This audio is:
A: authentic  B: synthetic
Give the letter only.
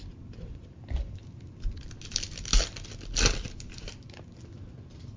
A